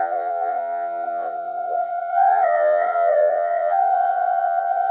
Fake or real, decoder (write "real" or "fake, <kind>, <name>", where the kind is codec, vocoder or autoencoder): fake, vocoder, Vocos